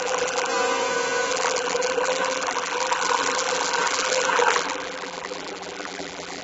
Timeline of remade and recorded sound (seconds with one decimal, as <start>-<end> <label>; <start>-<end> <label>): 0.0-0.5 remade; 0.5-1.3 recorded; 1.3-6.4 remade